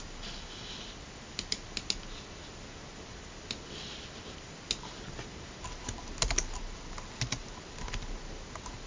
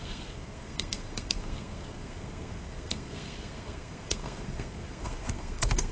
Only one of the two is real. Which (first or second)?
first